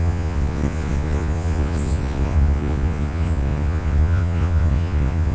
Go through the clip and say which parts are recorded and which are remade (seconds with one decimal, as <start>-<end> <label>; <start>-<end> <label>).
0.0-5.3 remade